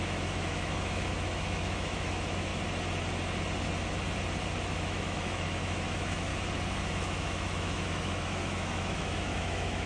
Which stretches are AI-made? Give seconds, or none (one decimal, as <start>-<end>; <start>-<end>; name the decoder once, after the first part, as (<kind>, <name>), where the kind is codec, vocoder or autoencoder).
0.0-2.5 (autoencoder, DAC-VAE); 4.7-6.3; 6.8-9.9